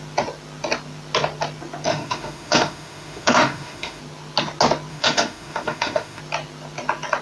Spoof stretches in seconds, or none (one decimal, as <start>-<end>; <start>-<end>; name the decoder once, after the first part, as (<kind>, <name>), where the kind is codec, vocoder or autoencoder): 1.9-4.0 (autoencoder, DAC-VAE); 4.9-6.2